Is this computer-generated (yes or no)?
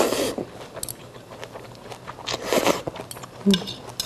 no